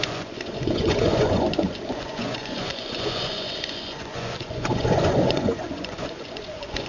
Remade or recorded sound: remade